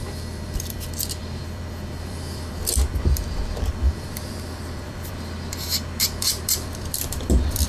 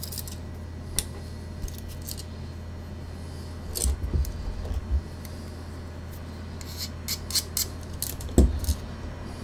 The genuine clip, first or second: second